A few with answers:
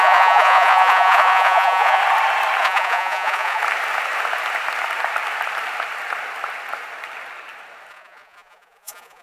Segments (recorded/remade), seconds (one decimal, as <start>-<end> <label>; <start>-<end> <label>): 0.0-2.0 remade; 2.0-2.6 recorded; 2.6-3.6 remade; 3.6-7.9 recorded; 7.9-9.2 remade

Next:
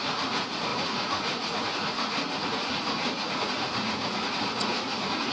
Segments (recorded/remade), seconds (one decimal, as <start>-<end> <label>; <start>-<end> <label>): 0.0-5.3 remade

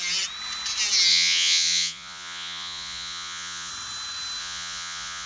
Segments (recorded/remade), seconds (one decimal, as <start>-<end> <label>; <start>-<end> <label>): 0.0-1.1 recorded; 1.1-3.7 remade; 3.7-4.4 recorded; 4.4-5.3 remade

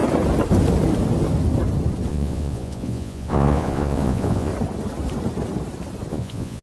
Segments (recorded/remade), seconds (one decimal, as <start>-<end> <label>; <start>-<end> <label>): 0.0-2.1 recorded; 2.1-4.5 remade; 4.5-6.1 recorded; 6.1-6.6 remade

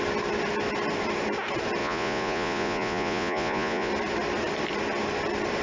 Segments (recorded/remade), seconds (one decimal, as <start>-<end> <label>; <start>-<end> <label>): 0.0-1.8 recorded; 1.8-3.9 remade; 3.9-5.6 recorded